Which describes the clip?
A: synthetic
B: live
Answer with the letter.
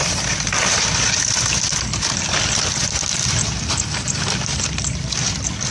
B